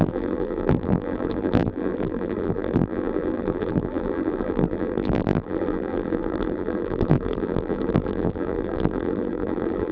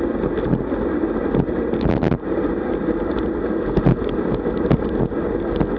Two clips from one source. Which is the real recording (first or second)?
second